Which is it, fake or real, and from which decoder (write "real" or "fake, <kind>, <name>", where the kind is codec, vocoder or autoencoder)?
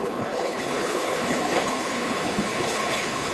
fake, codec, HILCodec